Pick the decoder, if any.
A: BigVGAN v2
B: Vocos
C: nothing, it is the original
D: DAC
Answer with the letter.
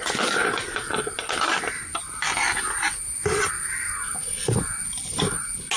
C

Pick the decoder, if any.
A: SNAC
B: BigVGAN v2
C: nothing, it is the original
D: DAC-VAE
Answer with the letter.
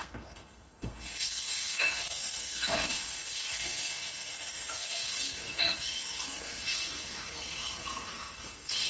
A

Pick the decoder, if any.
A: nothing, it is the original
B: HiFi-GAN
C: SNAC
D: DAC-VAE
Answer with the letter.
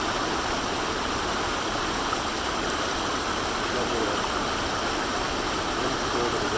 A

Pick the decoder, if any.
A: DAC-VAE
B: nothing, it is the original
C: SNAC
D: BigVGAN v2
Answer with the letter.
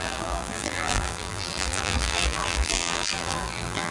D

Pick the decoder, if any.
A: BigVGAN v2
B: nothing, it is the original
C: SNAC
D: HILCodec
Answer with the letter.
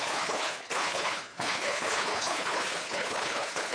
D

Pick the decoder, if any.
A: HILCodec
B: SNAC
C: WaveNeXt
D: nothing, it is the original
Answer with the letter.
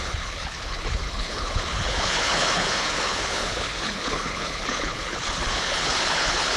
A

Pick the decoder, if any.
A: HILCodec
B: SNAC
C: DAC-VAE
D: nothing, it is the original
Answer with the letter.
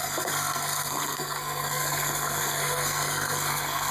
B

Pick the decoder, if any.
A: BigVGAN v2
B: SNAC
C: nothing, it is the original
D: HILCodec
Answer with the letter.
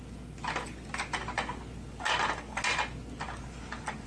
C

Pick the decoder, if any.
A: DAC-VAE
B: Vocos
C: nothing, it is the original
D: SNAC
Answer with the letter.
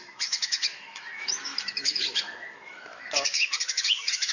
A